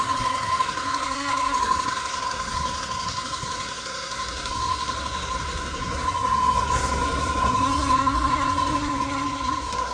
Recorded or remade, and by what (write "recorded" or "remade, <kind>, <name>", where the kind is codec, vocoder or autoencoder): remade, codec, SNAC